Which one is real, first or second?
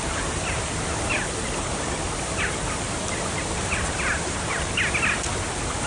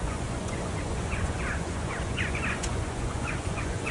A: first